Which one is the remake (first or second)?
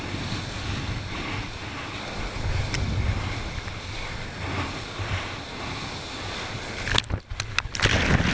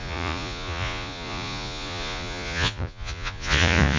second